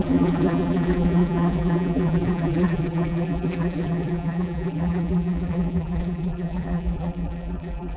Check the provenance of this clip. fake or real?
fake